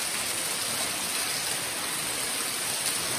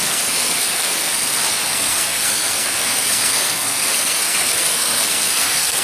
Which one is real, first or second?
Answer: first